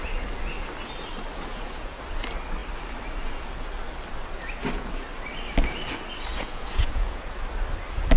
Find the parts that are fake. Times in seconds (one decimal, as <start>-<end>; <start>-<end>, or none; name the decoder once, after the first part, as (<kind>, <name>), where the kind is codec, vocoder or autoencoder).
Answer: 1.5-2.0 (vocoder, Vocos); 6.3-7.2